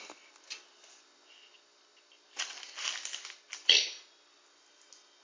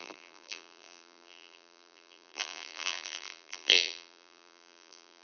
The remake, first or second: second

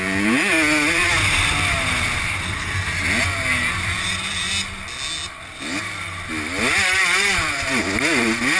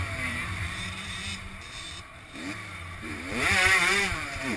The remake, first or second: second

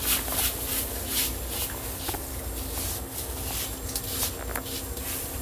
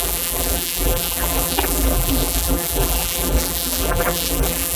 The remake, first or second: second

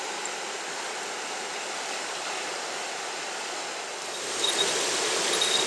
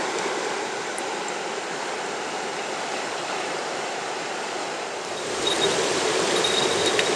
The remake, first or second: second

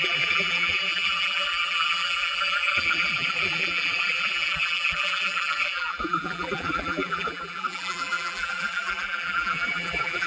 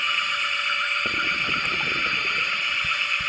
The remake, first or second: first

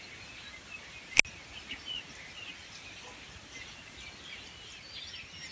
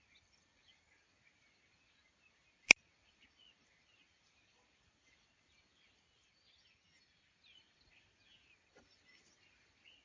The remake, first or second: second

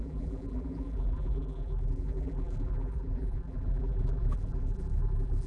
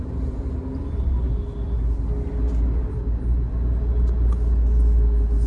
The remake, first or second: first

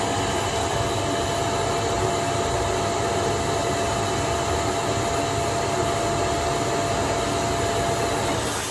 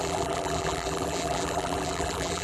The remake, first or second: second